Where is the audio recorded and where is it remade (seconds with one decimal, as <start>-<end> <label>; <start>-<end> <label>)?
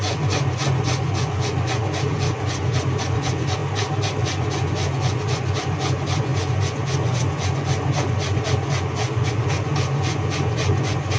0.0-3.6 remade; 3.6-4.2 recorded; 4.2-11.2 remade